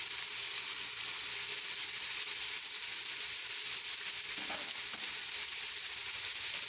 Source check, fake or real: real